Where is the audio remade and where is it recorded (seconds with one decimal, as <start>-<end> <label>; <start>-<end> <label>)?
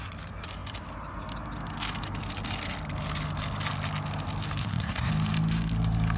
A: 0.0-4.6 recorded; 4.6-5.1 remade; 5.1-6.2 recorded